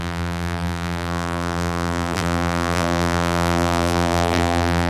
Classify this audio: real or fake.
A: fake